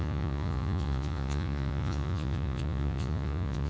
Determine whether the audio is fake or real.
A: fake